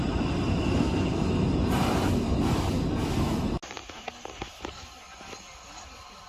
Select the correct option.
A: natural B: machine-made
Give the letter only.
A